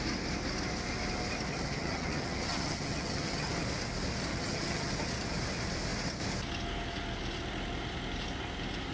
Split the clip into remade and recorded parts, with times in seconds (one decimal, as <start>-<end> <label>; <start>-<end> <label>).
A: 0.0-1.5 recorded; 1.5-3.5 remade; 3.5-4.3 recorded; 4.3-4.9 remade; 4.9-8.9 recorded